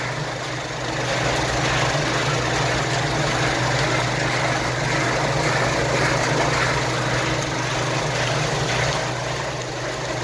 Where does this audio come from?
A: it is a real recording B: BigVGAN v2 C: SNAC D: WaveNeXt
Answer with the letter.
A